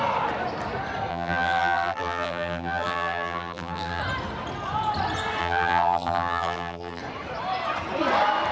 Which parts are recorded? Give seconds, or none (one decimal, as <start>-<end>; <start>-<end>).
0.0-1.1; 4.0-5.4; 7.0-8.5